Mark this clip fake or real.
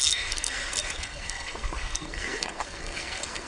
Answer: fake